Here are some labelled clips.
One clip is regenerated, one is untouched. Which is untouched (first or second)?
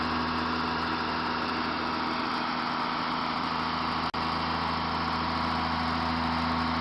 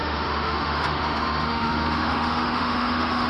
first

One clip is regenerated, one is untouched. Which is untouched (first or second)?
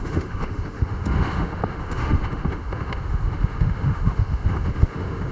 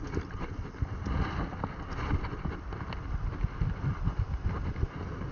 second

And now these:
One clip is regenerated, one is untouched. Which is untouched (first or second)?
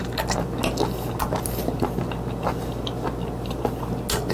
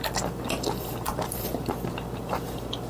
first